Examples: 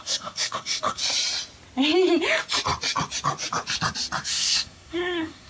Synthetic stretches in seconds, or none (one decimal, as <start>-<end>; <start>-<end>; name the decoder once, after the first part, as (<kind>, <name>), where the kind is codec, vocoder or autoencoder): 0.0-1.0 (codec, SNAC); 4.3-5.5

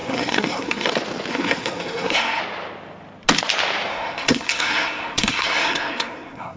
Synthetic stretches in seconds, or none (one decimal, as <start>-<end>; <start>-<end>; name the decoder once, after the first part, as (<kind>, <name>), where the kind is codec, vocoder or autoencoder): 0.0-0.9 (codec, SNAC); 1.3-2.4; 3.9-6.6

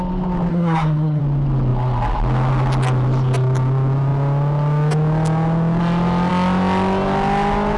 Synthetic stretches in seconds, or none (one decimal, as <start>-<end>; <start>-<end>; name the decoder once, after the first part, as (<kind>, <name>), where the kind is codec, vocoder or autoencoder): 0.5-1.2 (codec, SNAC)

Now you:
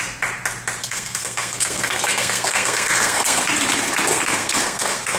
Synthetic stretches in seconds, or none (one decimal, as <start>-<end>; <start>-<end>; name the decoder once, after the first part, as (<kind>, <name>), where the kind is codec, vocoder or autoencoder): 0.8-3.4 (codec, SNAC); 4.1-5.2

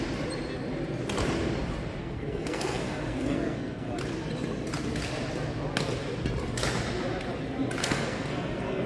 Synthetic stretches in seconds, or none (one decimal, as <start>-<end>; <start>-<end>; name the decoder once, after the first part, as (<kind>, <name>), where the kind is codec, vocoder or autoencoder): 2.0-3.9 (codec, SNAC); 7.8-8.9

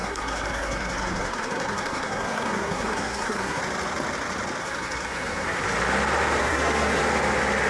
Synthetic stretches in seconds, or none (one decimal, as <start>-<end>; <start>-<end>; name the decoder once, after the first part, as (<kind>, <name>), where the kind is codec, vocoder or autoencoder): 0.0-3.6 (codec, SNAC); 4.6-5.6; 6.4-7.0